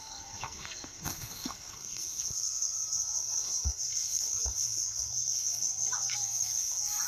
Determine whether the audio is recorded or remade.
remade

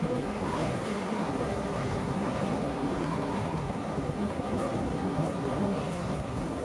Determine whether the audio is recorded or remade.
remade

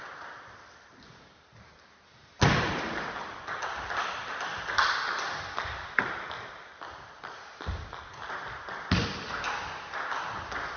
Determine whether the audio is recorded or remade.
recorded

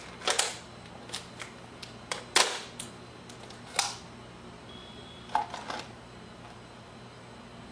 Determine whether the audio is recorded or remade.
recorded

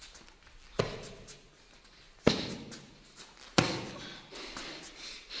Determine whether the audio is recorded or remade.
recorded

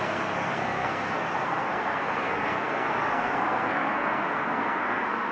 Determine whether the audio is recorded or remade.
remade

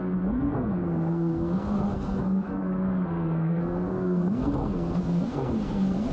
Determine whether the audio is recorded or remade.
remade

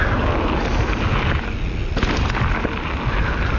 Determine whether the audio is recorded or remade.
recorded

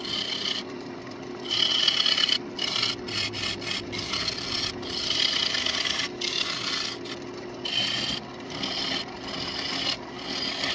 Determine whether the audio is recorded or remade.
recorded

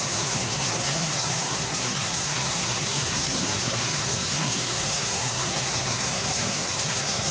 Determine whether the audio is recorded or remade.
remade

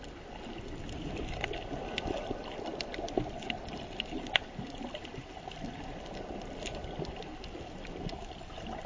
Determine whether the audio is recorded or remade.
recorded